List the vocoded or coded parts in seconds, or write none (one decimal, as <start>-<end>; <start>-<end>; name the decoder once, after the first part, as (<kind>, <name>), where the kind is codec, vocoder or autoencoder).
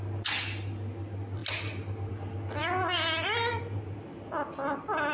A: none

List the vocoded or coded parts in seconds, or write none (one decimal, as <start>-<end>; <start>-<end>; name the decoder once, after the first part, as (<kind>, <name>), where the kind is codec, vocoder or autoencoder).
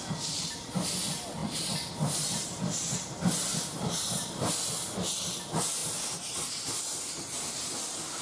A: 3.5-4.5 (vocoder, BigVGAN v2); 5.8-7.1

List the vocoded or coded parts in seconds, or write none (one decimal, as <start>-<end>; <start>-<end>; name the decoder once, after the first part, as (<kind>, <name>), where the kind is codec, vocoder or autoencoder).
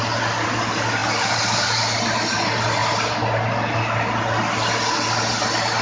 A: none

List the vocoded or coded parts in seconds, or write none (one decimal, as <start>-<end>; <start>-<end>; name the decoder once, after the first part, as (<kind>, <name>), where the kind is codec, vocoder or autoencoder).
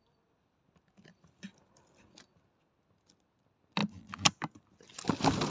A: none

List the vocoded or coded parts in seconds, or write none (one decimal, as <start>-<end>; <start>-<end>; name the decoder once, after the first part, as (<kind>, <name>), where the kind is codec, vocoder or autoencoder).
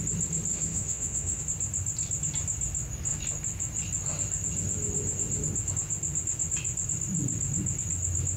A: 0.5-1.4 (autoencoder, DAC-VAE)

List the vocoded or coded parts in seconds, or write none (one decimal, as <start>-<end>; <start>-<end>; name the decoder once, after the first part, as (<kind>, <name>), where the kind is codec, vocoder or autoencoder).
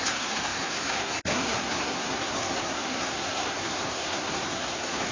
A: 0.0-5.1 (codec, SNAC)